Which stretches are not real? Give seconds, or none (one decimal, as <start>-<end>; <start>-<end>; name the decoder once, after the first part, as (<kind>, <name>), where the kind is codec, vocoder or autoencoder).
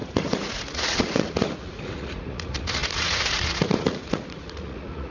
0.0-5.1 (vocoder, Vocos)